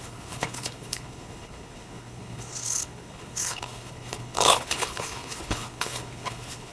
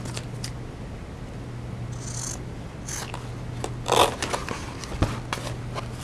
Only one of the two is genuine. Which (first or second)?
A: second